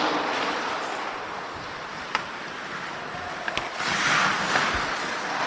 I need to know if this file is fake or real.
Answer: fake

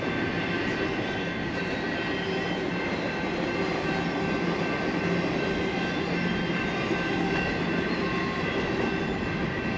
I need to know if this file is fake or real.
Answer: real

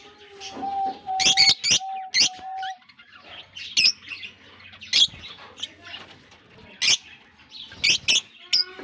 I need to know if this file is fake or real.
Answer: real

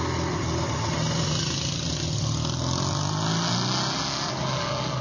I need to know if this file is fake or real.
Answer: real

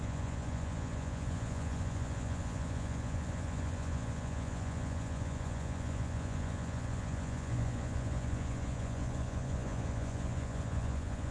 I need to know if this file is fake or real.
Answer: fake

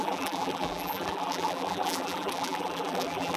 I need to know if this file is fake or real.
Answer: fake